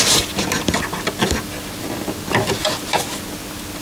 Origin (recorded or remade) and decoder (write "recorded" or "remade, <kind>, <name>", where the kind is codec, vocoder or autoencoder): recorded